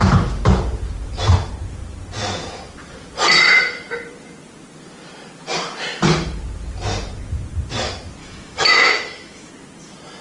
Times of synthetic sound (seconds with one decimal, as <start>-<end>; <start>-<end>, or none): 8.2-9.5